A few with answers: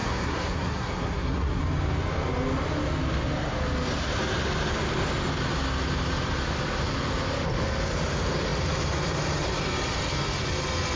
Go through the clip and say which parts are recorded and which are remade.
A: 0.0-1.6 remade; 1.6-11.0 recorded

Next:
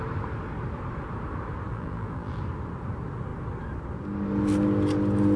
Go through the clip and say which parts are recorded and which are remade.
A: 0.0-1.7 recorded; 1.7-2.4 remade; 2.4-5.4 recorded

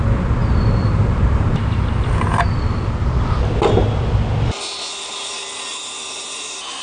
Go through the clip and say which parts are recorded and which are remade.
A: 0.0-0.4 recorded; 0.4-1.9 remade; 1.9-6.8 recorded